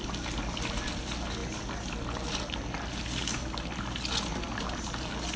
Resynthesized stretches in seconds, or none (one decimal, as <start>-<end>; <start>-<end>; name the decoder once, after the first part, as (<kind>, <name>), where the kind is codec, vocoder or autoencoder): none